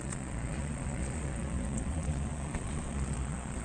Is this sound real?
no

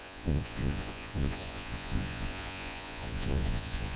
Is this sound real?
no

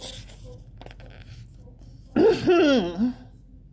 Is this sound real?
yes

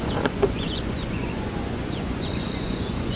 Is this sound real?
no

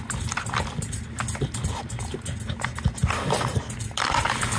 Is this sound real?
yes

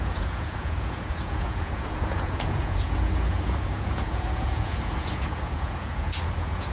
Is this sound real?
no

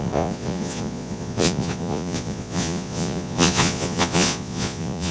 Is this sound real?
no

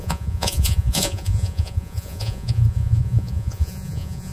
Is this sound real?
no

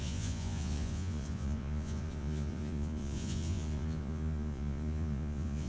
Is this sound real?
no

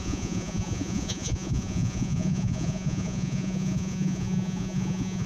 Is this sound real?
no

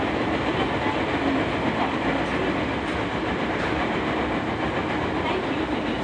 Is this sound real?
yes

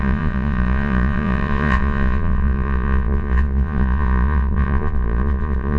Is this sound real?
no